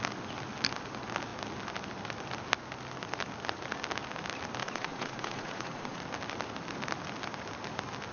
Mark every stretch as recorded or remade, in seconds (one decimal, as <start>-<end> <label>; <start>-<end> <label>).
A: 0.0-4.6 recorded; 4.6-6.0 remade; 6.0-8.1 recorded